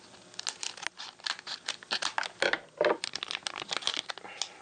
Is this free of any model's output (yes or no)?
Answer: yes